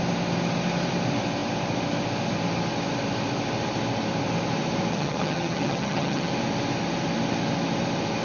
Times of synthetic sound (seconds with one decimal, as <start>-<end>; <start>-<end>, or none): 4.9-6.3